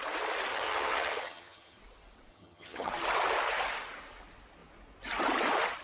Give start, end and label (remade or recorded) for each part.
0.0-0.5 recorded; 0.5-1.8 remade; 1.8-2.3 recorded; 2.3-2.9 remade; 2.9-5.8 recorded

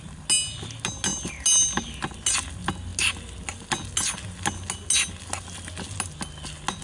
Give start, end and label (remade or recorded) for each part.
0.0-6.8 recorded

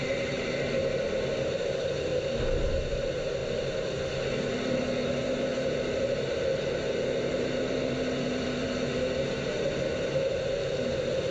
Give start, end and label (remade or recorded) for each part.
0.0-0.8 remade; 0.8-1.5 recorded; 1.5-2.1 remade; 2.1-2.7 recorded; 2.7-3.4 remade; 3.4-4.3 recorded; 4.3-11.3 remade

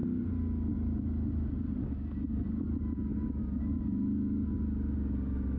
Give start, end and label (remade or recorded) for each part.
0.0-5.6 recorded

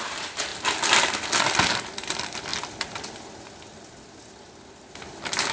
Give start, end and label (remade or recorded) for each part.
0.0-5.5 recorded

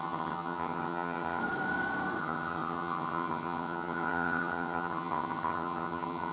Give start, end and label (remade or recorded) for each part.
0.0-1.4 remade; 1.4-2.2 recorded; 2.2-6.3 remade